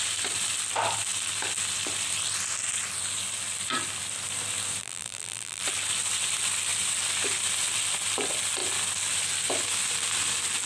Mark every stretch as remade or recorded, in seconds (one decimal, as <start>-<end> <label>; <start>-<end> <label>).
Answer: 0.0-4.8 recorded; 4.8-5.6 remade; 5.6-10.7 recorded